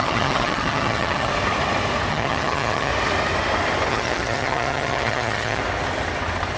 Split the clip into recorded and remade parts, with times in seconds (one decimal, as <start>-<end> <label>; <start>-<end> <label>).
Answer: 0.0-1.3 remade; 1.3-2.1 recorded; 2.1-2.9 remade; 2.9-3.9 recorded; 3.9-5.6 remade; 5.6-6.6 recorded